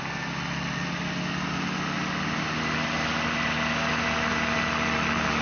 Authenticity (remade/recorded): recorded